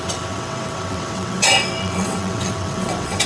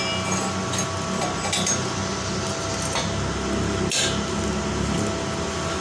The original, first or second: second